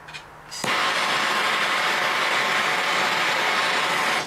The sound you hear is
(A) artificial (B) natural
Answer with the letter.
B